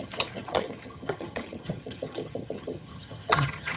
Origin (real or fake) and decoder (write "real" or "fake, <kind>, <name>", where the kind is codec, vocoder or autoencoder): fake, vocoder, HiFi-GAN